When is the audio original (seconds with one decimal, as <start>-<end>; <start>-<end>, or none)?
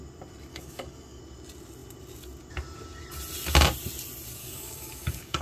0.0-0.5; 1.2-4.4